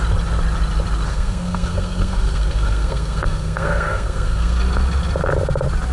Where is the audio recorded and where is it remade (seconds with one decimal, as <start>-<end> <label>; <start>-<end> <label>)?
0.0-1.1 recorded; 1.1-4.6 remade; 4.6-5.9 recorded